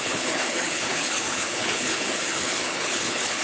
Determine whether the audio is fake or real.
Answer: fake